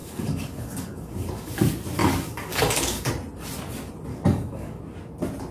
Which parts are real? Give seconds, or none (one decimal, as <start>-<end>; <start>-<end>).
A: 1.6-2.0; 3.1-4.1; 4.8-5.5